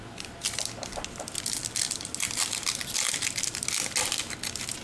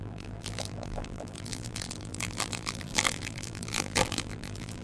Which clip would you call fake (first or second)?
second